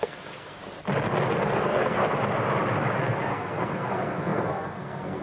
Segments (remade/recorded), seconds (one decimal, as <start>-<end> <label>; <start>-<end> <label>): 0.0-0.6 remade; 0.6-1.3 recorded; 1.3-2.0 remade; 2.0-3.2 recorded; 3.2-5.2 remade